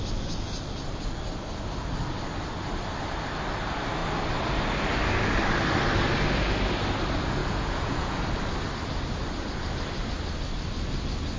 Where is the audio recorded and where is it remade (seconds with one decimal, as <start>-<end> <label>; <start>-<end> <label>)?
0.0-7.4 recorded; 7.4-8.2 remade; 8.2-11.4 recorded